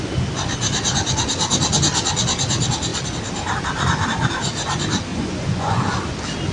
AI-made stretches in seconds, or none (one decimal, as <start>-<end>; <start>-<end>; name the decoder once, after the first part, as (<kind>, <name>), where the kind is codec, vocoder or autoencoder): 5.1-5.8 (vocoder, Vocos)

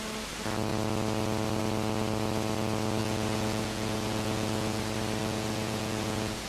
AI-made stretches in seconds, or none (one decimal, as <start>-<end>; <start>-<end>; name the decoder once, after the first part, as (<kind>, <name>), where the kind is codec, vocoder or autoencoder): 3.0-4.8 (vocoder, Vocos); 5.2-6.5